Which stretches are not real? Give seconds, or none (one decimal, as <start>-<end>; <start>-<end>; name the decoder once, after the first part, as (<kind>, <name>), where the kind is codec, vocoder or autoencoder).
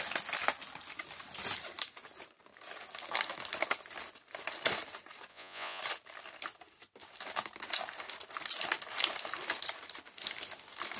5.3-5.8 (vocoder, Vocos)